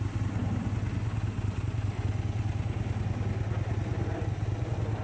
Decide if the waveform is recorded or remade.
recorded